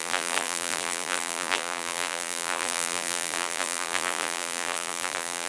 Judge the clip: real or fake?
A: fake